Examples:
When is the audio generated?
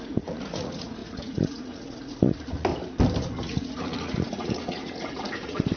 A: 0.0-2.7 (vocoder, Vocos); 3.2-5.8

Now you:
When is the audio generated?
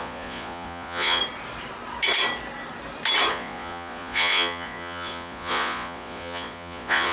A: 0.0-1.2 (vocoder, Vocos); 3.3-7.1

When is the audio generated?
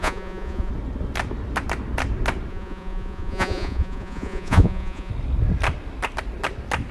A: 0.0-0.7 (vocoder, Vocos); 2.5-5.1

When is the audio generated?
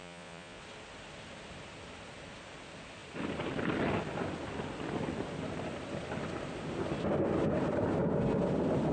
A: 0.0-0.6 (vocoder, Vocos)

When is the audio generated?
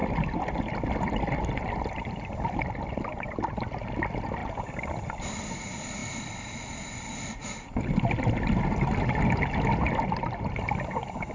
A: none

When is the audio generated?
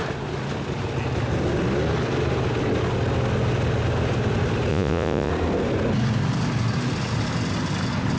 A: 4.7-5.3 (vocoder, Vocos)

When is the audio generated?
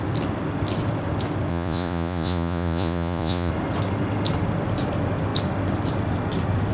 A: 1.5-3.5 (vocoder, Vocos)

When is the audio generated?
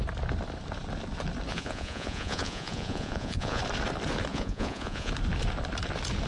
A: 1.5-3.6 (vocoder, Vocos); 4.3-5.1